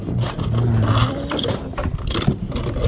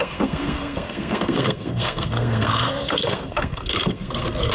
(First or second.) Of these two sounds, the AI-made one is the second